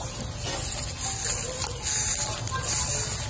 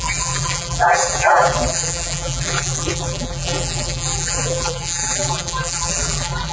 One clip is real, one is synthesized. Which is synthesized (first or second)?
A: second